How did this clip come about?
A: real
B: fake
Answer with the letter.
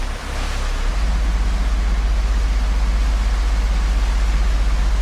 A